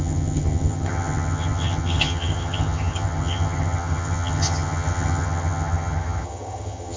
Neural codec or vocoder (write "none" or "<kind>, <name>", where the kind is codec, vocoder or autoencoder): vocoder, HiFi-GAN